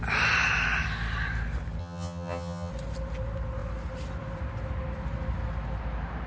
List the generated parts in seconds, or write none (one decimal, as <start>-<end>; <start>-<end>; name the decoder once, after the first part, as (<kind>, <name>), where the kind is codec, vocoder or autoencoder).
1.8-2.7 (vocoder, HiFi-GAN)